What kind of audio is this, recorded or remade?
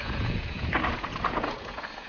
remade